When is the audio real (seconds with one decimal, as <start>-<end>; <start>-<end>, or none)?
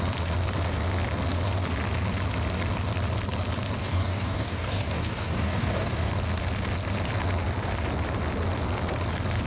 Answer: 0.0-3.8; 6.1-9.5